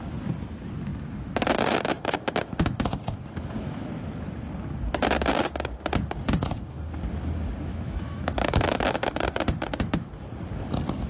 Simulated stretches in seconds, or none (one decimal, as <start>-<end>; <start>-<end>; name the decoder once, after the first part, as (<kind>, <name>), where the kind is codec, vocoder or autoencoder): 7.7-9.1 (autoencoder, DAC-VAE)